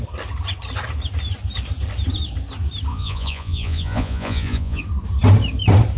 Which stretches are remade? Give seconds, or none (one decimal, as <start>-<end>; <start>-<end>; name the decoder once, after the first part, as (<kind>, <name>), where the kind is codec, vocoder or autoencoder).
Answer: 2.9-4.8 (vocoder, Vocos)